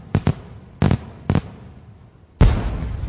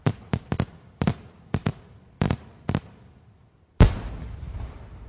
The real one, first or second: first